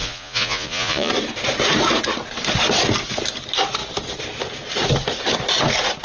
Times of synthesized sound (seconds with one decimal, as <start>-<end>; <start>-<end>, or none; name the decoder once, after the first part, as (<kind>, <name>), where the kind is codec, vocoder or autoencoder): 0.0-1.1 (vocoder, Vocos)